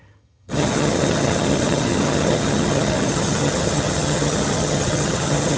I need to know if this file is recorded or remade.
remade